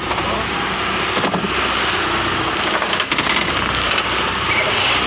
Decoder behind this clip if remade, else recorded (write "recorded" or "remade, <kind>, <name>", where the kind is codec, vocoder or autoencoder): recorded